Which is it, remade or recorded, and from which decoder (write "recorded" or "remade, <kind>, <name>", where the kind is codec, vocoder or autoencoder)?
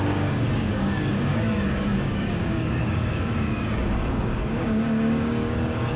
remade, codec, DAC